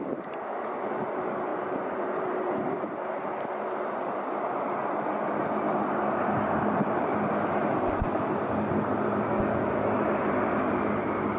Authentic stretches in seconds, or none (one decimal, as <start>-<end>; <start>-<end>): 0.0-1.5; 2.9-11.4